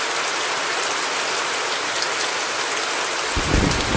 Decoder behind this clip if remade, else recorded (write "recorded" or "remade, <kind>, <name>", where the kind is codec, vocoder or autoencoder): recorded